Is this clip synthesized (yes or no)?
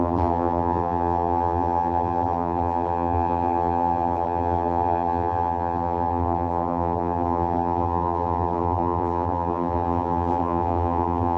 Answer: yes